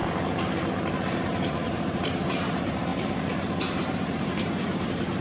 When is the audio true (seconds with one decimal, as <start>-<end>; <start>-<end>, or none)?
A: 0.0-0.9; 2.9-3.7